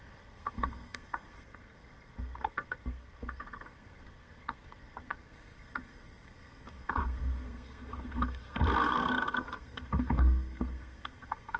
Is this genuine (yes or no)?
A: no